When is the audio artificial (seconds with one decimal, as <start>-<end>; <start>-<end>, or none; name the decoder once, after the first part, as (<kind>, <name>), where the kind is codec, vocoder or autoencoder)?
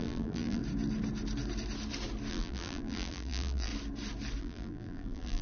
0.0-0.6 (vocoder, BigVGAN v2); 2.3-3.7; 4.4-5.4